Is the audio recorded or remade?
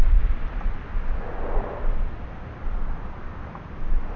recorded